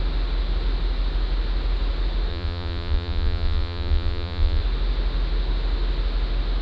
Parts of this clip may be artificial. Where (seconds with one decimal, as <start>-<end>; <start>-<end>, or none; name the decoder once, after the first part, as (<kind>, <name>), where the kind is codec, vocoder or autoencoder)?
2.3-4.6 (vocoder, Vocos)